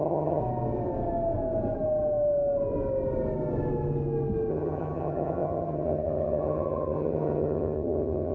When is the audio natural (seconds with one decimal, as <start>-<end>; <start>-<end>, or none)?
0.4-4.5